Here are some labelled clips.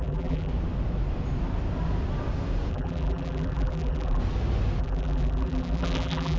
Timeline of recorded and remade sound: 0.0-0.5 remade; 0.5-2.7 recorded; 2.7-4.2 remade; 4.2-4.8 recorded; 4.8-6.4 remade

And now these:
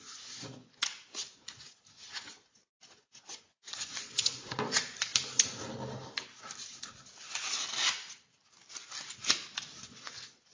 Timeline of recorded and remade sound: 0.0-5.1 remade; 5.1-9.8 recorded; 9.8-10.5 remade

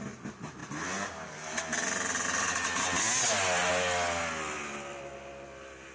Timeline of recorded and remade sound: 0.0-5.9 recorded

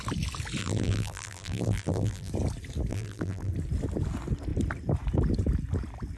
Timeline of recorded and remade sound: 0.0-0.6 recorded; 0.6-2.3 remade; 2.3-2.9 recorded; 2.9-3.5 remade; 3.5-6.2 recorded

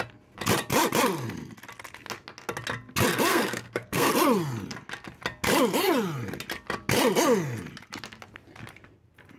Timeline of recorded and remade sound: 0.0-3.3 recorded; 3.3-4.1 remade; 4.1-9.4 recorded